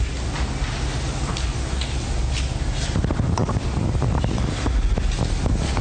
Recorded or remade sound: recorded